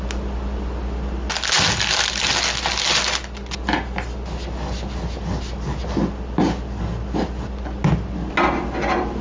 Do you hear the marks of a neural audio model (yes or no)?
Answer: no